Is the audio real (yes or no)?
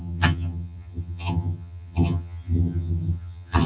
no